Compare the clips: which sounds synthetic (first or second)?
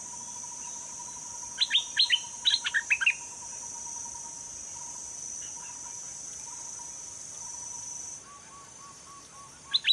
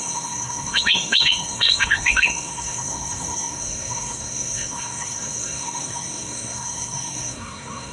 second